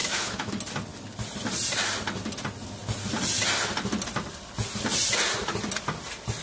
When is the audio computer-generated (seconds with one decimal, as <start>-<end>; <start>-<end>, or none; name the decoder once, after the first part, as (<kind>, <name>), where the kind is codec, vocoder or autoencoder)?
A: 0.0-0.5 (autoencoder, DAC-VAE)

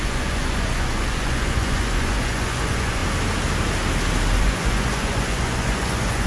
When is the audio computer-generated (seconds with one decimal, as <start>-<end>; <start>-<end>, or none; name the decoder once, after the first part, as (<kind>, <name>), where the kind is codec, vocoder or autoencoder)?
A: 0.0-3.0 (vocoder, Vocos); 4.4-6.3